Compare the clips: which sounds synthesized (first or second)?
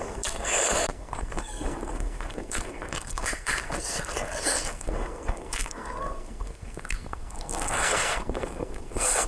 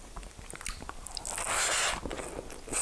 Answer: first